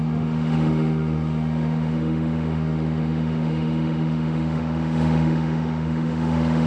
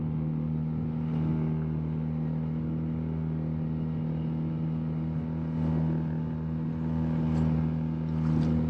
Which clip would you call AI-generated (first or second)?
first